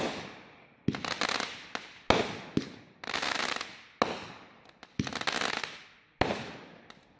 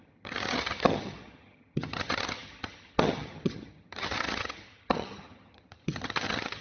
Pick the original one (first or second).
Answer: first